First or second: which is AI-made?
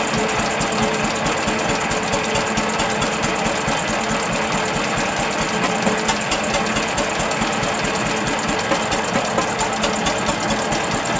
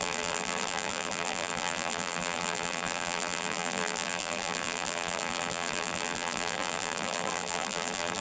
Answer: second